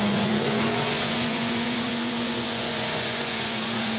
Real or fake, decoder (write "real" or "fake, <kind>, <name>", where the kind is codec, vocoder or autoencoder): fake, vocoder, Vocos